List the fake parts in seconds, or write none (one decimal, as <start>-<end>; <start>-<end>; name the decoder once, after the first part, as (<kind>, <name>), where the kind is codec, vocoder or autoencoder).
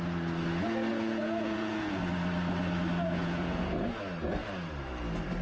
0.9-2.0 (vocoder, Vocos); 3.2-3.9